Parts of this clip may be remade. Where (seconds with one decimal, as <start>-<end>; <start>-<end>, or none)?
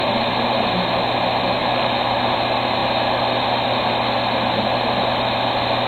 1.6-2.4